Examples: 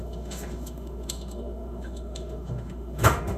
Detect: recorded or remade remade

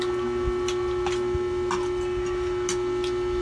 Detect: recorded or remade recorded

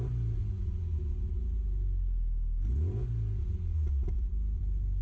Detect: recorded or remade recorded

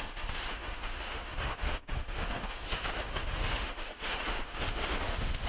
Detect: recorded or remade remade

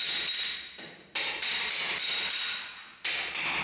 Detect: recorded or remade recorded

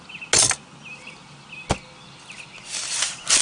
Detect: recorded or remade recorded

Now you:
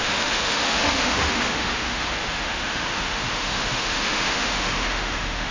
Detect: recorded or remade remade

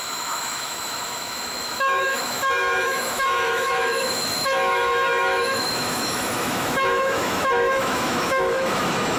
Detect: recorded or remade remade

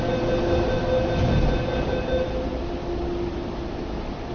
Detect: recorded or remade recorded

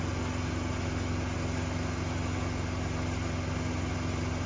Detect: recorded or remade recorded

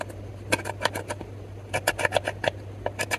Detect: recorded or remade recorded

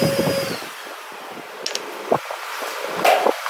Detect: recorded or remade recorded